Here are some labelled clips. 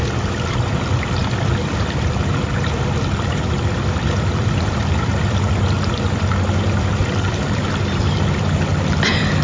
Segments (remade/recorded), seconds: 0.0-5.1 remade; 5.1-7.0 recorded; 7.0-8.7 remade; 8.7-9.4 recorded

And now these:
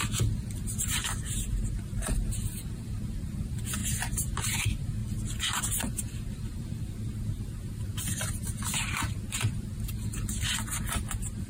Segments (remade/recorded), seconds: 0.0-5.0 remade; 5.0-5.6 recorded; 5.6-8.4 remade; 8.4-8.9 recorded; 8.9-11.5 remade

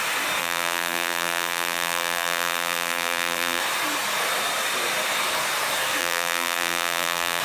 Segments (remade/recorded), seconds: 0.0-0.4 recorded; 0.4-3.6 remade; 3.6-6.0 recorded; 6.0-7.4 remade

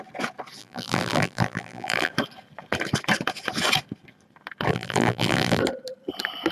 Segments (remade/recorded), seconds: 0.0-0.6 recorded; 0.6-2.1 remade; 2.1-4.7 recorded; 4.7-5.6 remade; 5.6-6.5 recorded

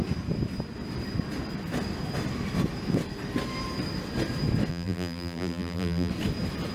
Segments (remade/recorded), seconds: 0.0-4.7 recorded; 4.7-6.1 remade; 6.1-6.7 recorded

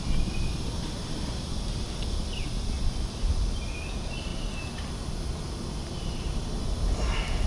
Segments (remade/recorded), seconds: 0.0-7.5 recorded